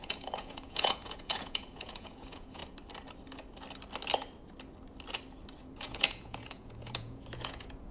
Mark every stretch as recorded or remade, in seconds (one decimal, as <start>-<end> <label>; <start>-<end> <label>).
0.0-2.6 remade; 2.6-5.6 recorded; 5.6-7.9 remade